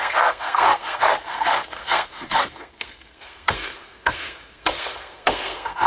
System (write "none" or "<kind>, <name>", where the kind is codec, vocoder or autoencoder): codec, SNAC